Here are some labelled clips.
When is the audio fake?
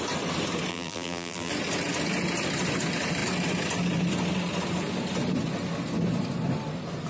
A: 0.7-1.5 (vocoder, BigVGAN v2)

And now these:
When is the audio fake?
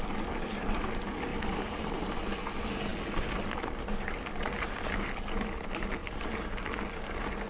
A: 1.3-2.2 (vocoder, BigVGAN v2)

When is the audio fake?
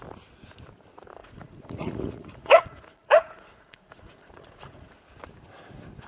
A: 1.2-4.9 (vocoder, Vocos)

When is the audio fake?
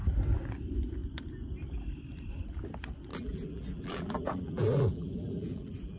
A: 3.1-6.0 (vocoder, BigVGAN v2)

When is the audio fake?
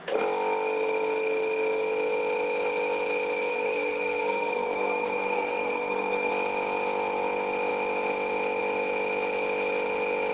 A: 3.5-6.3 (codec, SNAC)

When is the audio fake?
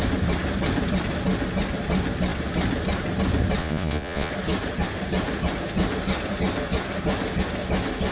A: 3.6-4.3 (vocoder, Vocos)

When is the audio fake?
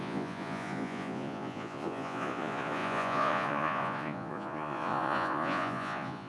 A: 0.0-6.3 (vocoder, Vocos)